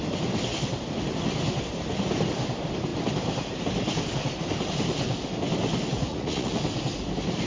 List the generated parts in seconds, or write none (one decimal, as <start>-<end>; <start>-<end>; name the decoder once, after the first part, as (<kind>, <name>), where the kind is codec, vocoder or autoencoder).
5.9-6.6 (vocoder, Vocos)